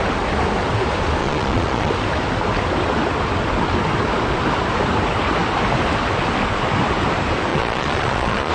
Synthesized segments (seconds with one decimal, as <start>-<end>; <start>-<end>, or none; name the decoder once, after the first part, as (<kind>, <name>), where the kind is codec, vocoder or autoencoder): 1.2-1.9 (vocoder, Vocos); 7.5-8.5